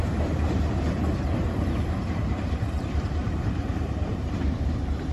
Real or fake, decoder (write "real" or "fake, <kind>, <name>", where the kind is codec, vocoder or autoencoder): fake, vocoder, BigVGAN v2